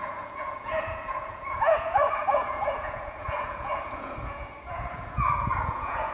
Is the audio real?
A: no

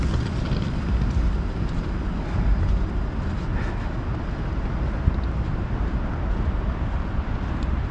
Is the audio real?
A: yes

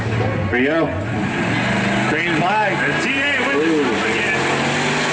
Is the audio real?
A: yes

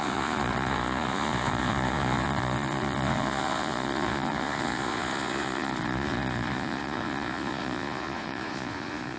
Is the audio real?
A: no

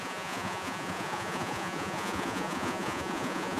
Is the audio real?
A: no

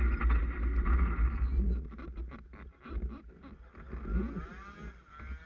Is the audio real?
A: yes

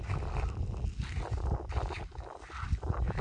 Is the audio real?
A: yes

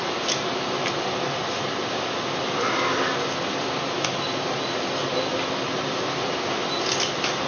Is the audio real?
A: yes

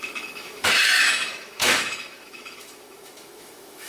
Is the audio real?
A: no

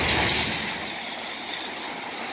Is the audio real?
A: yes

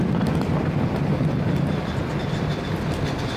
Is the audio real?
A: yes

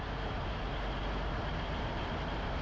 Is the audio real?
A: yes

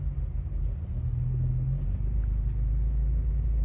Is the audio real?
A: yes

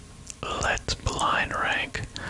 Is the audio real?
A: yes